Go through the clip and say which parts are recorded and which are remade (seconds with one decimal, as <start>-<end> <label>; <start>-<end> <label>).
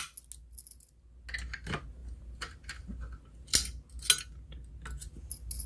0.0-5.7 recorded